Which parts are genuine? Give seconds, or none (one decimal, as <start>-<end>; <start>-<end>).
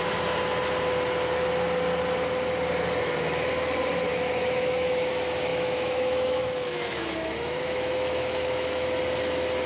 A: 0.0-4.1; 5.1-5.5; 9.0-9.7